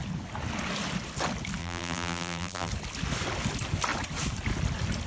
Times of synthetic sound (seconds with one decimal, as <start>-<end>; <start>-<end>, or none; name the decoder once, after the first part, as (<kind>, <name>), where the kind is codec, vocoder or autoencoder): 1.6-2.7 (vocoder, BigVGAN v2)